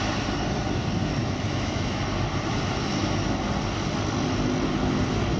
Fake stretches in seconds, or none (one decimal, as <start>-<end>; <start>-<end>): 1.2-2.0